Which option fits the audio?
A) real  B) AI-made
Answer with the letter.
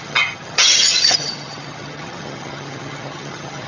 B